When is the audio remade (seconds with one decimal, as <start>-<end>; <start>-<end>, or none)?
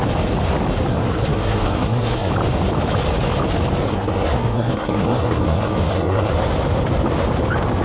0.9-2.3; 3.9-6.3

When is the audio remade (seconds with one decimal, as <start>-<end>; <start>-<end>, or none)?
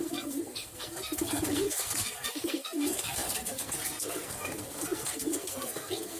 0.0-6.2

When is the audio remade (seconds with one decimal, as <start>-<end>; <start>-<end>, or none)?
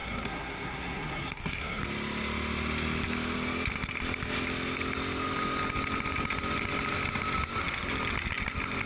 0.0-1.8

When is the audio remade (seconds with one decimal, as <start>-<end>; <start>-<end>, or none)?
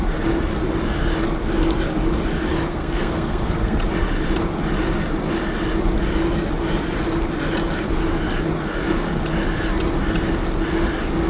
2.7-3.8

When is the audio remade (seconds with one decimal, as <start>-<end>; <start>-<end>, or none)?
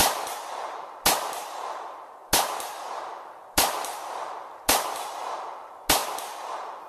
none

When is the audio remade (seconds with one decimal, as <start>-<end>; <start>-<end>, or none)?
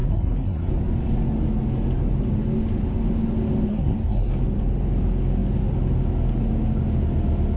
0.0-0.7; 3.7-4.3